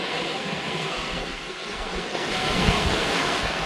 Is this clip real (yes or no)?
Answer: no